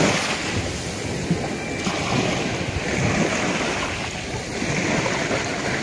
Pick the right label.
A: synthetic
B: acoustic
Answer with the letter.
B